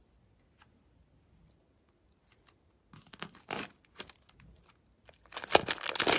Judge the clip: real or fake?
real